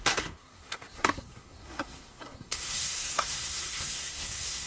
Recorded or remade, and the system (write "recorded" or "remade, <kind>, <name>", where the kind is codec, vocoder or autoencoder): remade, codec, SNAC